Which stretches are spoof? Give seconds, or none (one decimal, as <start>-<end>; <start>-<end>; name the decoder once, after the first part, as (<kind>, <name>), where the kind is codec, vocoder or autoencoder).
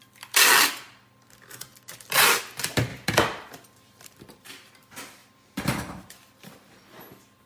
2.9-4.7 (vocoder, BigVGAN v2); 5.2-6.7